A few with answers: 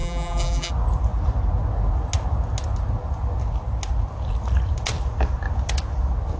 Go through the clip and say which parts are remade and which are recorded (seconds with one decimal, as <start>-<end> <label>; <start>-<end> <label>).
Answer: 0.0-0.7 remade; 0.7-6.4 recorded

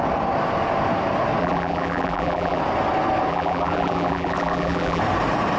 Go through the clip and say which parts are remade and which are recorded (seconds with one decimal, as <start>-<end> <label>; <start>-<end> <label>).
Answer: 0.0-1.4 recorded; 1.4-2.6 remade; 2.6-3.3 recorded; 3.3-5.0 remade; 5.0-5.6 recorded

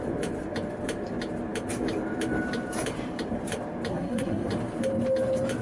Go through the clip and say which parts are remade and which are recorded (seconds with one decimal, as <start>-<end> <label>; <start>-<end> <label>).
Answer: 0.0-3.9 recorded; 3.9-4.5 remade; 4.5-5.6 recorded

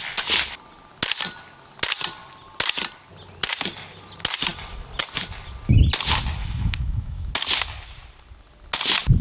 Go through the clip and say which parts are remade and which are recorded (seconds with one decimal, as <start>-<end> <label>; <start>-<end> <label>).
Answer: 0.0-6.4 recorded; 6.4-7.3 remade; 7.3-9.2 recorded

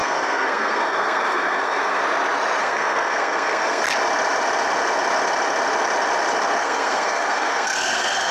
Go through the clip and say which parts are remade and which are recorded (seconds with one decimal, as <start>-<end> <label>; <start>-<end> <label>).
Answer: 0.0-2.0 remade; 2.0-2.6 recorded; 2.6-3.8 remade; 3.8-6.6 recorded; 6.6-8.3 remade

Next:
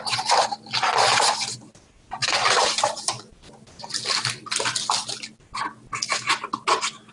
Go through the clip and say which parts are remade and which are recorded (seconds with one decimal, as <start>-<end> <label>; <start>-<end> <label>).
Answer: 0.0-2.2 recorded; 2.2-3.3 remade; 3.3-7.1 recorded

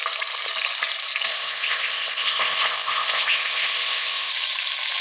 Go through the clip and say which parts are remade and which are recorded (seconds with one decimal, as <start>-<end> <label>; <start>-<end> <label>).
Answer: 0.0-1.3 recorded; 1.3-4.3 remade; 4.3-5.0 recorded

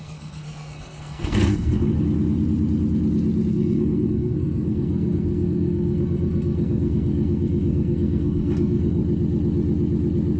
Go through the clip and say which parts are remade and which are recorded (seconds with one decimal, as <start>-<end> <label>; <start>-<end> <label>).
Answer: 0.0-1.9 remade; 1.9-3.5 recorded; 3.5-9.0 remade; 9.0-10.4 recorded